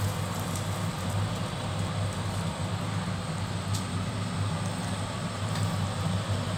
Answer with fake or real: real